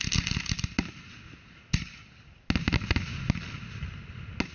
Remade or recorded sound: recorded